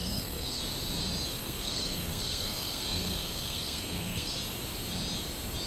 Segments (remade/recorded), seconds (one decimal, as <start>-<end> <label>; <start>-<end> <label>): 0.0-0.6 remade; 0.6-1.3 recorded; 1.3-4.3 remade; 4.3-5.7 recorded